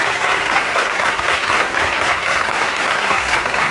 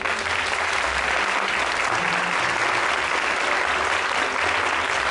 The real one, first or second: second